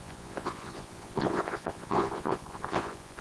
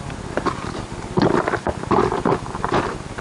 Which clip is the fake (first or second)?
first